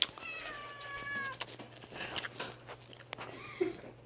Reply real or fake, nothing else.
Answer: real